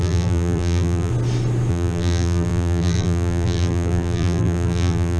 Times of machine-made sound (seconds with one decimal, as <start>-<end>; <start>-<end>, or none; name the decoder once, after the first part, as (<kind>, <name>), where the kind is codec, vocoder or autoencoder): 0.0-1.1 (vocoder, BigVGAN v2); 1.7-5.2